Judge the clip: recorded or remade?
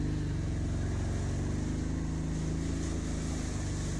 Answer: recorded